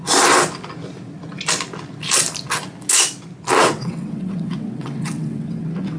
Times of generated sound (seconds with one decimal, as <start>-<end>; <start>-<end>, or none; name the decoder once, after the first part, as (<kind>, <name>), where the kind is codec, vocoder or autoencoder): 3.6-6.0 (vocoder, WaveNeXt)